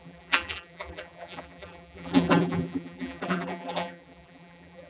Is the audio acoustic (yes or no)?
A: no